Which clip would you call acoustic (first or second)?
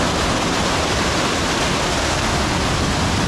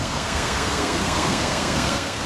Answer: first